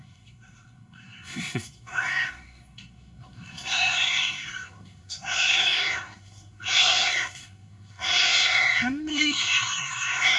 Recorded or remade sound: remade